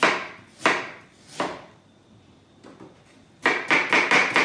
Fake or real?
real